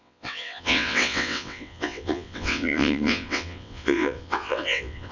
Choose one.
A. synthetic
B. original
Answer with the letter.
A